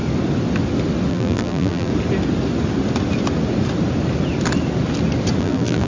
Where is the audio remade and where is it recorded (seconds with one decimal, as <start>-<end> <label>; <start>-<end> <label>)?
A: 0.0-1.1 recorded; 1.1-1.9 remade; 1.9-5.4 recorded; 5.4-5.9 remade